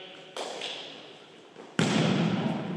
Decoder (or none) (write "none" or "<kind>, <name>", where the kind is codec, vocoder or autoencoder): none